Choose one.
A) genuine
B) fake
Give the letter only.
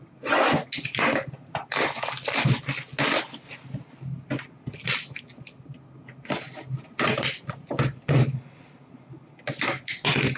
A